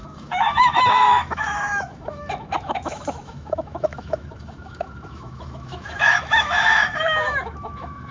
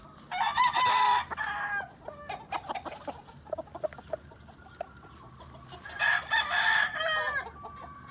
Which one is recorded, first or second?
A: second